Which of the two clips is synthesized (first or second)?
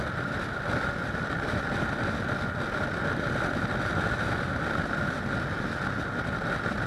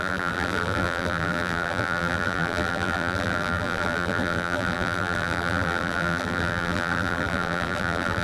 second